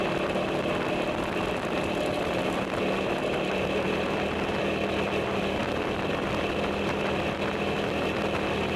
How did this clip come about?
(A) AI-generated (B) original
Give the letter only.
B